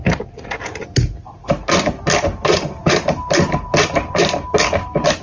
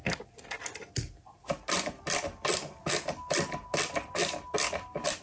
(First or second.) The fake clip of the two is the first